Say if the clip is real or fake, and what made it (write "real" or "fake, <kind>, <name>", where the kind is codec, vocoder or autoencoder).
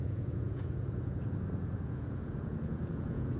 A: fake, vocoder, Vocos